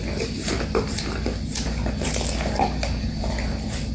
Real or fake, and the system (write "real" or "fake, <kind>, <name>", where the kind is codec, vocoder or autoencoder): real